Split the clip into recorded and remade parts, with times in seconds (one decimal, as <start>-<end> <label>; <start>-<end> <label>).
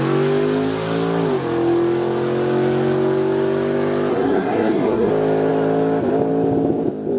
0.0-4.1 recorded; 4.1-5.1 remade; 5.1-7.2 recorded